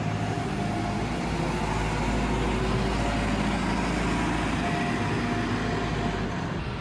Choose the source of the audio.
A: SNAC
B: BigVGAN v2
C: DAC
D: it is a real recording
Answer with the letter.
D